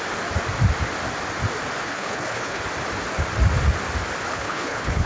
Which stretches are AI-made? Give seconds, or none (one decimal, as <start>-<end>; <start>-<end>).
1.8-2.6; 4.3-5.1